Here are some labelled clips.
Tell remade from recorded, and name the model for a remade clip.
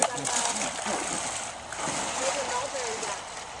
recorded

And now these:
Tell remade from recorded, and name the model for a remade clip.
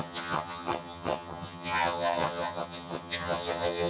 remade, vocoder, HiFi-GAN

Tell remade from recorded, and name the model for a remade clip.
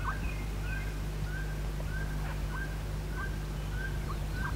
recorded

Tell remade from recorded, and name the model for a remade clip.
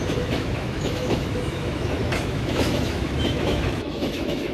remade, autoencoder, DAC-VAE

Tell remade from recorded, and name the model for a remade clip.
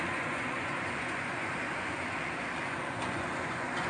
remade, vocoder, Vocos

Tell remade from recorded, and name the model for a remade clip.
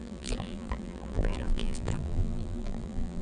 remade, vocoder, BigVGAN v2